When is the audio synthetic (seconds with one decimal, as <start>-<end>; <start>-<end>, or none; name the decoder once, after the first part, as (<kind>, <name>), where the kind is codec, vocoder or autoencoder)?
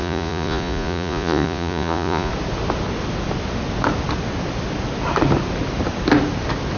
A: 0.0-2.3 (vocoder, Vocos)